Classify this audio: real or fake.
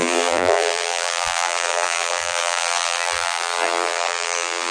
fake